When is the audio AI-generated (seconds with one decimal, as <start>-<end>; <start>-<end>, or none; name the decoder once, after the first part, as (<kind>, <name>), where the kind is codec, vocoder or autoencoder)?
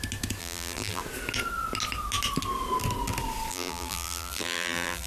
0.4-1.0 (vocoder, BigVGAN v2); 3.5-5.1